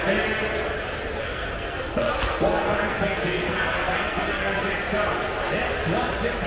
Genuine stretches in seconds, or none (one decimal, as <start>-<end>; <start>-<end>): 0.0-1.2; 4.7-6.5